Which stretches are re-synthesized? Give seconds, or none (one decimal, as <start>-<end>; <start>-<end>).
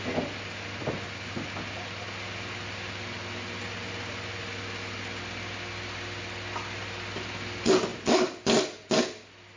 none